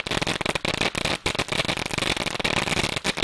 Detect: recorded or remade recorded